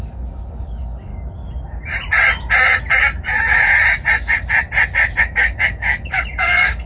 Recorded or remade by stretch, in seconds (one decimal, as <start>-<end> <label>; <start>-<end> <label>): 0.0-1.1 remade; 1.1-5.2 recorded; 5.2-6.9 remade